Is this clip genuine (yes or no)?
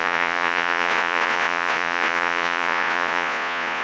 no